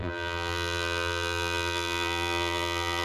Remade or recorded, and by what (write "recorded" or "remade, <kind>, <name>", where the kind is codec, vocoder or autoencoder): remade, vocoder, BigVGAN v2